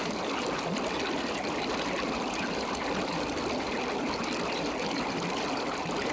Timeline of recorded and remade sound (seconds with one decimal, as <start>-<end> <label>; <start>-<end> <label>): 0.0-0.8 remade; 0.8-6.1 recorded